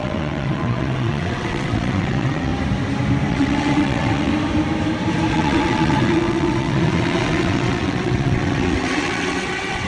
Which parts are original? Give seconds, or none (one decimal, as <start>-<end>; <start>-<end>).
2.5-3.3; 4.3-5.3